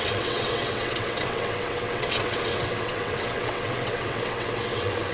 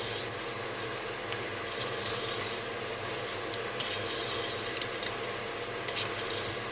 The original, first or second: second